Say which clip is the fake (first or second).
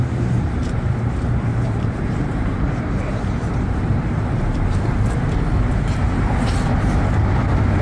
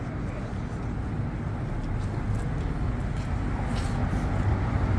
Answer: first